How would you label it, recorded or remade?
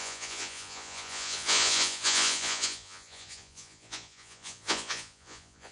remade